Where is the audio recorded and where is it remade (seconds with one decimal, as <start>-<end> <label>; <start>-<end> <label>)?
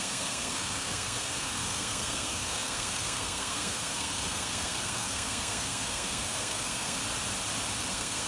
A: 0.0-7.0 remade; 7.0-7.9 recorded; 7.9-8.3 remade